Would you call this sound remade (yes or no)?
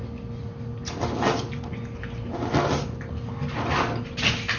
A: no